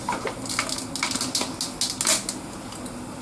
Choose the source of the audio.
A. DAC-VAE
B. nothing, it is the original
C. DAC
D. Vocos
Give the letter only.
B